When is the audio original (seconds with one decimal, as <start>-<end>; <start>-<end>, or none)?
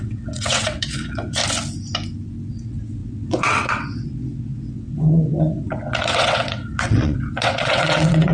1.4-2.5